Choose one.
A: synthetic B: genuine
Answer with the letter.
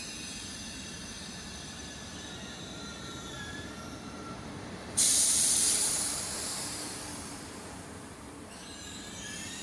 A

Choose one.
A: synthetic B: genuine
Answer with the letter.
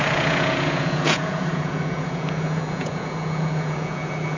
A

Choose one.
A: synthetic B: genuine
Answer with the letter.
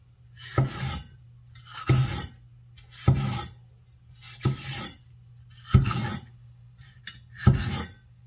B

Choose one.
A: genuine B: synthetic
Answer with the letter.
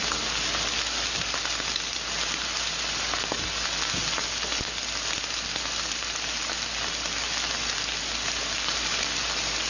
A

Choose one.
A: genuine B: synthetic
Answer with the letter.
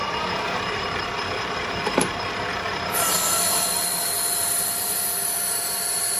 B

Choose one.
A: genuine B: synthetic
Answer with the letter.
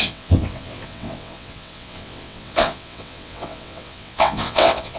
B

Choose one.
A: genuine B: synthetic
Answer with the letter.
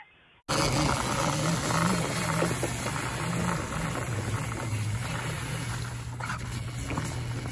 A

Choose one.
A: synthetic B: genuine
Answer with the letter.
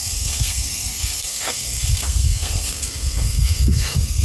A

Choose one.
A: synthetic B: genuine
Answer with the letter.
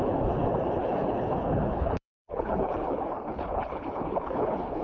A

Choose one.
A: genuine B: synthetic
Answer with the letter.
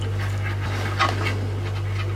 A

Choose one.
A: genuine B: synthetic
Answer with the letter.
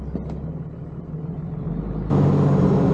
A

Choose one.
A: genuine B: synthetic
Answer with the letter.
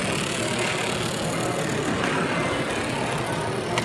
A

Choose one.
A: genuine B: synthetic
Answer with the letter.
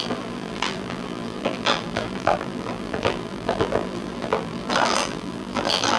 B